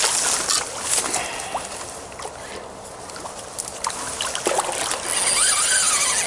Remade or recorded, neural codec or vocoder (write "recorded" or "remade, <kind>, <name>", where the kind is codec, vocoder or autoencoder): recorded